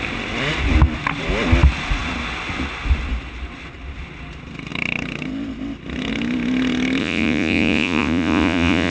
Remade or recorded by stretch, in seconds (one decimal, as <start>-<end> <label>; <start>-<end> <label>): 0.0-7.0 recorded; 7.0-8.9 remade